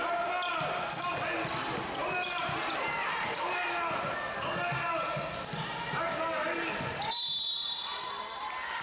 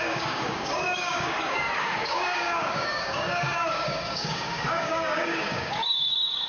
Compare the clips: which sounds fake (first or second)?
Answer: second